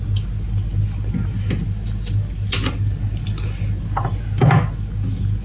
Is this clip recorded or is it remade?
recorded